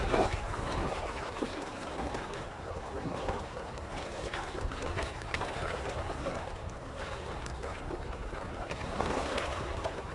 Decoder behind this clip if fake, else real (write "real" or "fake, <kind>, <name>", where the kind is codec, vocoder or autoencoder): fake, codec, SNAC